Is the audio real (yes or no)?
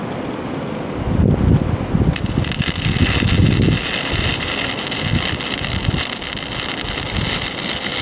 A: yes